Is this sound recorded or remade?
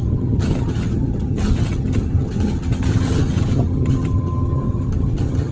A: remade